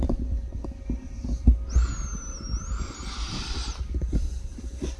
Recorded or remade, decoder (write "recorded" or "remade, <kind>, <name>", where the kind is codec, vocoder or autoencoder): recorded